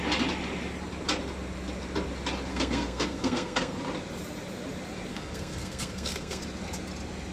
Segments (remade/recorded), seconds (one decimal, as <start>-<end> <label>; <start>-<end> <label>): 0.0-2.5 recorded; 2.5-3.8 remade; 3.8-5.1 recorded; 5.1-6.4 remade; 6.4-7.3 recorded